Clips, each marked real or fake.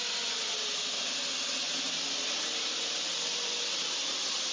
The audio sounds real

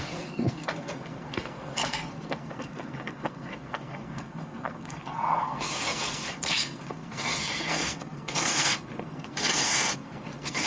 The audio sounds fake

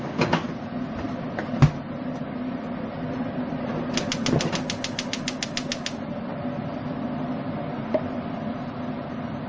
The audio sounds real